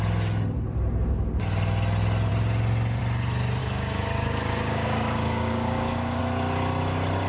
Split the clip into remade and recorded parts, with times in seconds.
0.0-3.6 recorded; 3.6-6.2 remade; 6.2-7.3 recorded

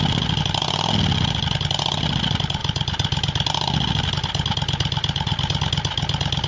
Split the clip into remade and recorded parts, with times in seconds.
0.0-6.5 recorded

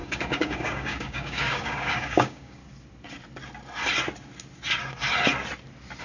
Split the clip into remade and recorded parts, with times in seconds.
0.0-2.6 remade; 2.6-6.0 recorded

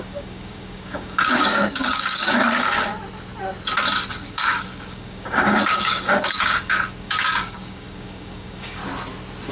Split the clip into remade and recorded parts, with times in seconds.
0.0-2.9 remade; 2.9-4.1 recorded; 4.1-8.8 remade; 8.8-9.5 recorded

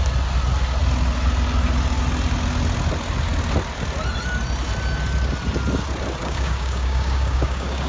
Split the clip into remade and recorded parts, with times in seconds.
0.0-6.2 recorded; 6.2-7.9 remade

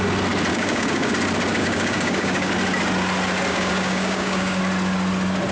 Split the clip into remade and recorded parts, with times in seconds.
0.0-0.5 recorded; 0.5-1.1 remade; 1.1-1.6 recorded; 1.6-2.5 remade; 2.5-3.5 recorded; 3.5-4.6 remade; 4.6-5.5 recorded

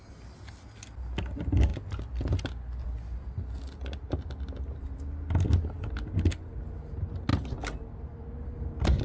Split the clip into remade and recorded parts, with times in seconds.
0.0-9.0 recorded

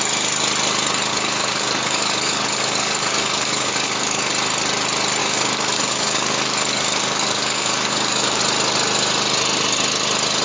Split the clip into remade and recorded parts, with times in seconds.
0.0-1.1 recorded; 1.1-4.3 remade; 4.3-5.2 recorded; 5.2-8.4 remade; 8.4-10.4 recorded